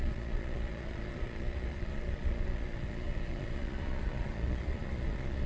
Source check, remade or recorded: remade